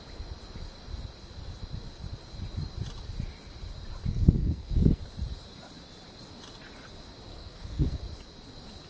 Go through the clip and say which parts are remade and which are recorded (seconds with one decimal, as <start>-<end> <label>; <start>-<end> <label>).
0.0-4.1 recorded; 4.1-5.0 remade; 5.0-7.3 recorded; 7.3-8.0 remade; 8.0-8.9 recorded